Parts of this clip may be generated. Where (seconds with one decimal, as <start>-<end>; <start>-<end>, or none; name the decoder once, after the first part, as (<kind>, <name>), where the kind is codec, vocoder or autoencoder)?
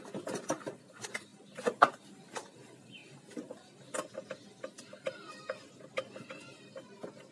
none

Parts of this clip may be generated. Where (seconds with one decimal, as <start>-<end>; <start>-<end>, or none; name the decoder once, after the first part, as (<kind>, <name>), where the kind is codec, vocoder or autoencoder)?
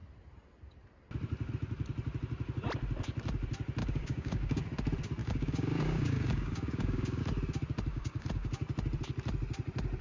3.8-4.6 (codec, DAC); 5.2-7.2; 7.9-8.5